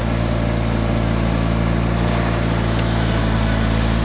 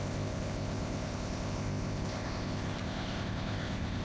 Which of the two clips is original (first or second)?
first